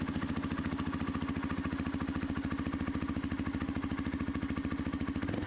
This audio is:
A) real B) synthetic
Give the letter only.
A